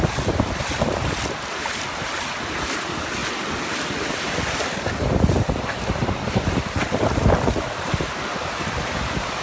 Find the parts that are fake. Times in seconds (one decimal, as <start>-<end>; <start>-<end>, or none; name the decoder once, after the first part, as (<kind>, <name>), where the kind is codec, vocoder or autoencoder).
none